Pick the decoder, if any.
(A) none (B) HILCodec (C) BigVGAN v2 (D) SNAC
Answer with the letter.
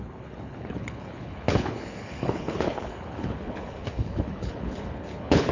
B